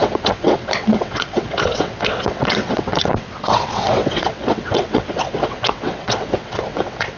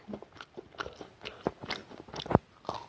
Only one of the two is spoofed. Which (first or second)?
first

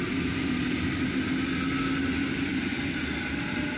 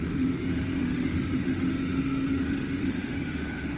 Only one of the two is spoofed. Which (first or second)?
second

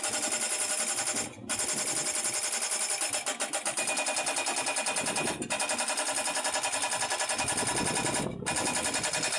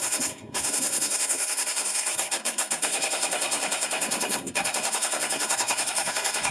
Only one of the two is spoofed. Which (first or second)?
second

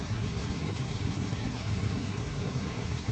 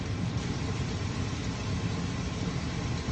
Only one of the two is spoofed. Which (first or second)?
first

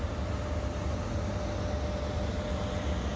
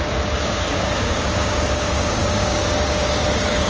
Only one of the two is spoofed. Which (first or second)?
second